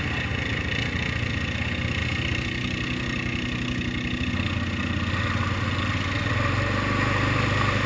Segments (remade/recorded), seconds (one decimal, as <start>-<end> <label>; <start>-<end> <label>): 0.0-7.9 recorded

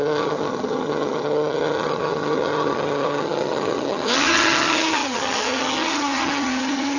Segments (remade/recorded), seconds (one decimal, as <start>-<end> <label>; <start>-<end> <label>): 0.0-7.0 remade

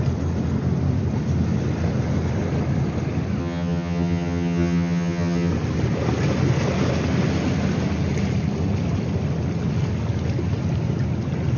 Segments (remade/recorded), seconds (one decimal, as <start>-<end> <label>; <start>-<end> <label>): 0.0-3.4 recorded; 3.4-5.5 remade; 5.5-11.6 recorded

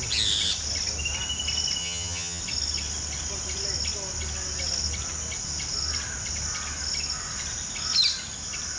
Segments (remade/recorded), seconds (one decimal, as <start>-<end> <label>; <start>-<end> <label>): 0.0-1.8 recorded; 1.8-2.4 remade; 2.4-8.8 recorded

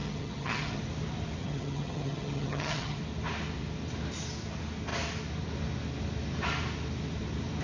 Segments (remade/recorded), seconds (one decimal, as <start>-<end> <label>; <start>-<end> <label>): 0.0-0.8 remade; 0.8-1.4 recorded; 1.4-3.0 remade; 3.0-7.6 recorded